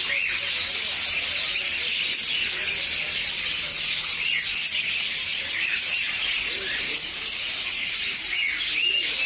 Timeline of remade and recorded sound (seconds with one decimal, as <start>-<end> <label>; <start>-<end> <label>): 0.0-5.3 recorded; 5.3-8.3 remade; 8.3-9.3 recorded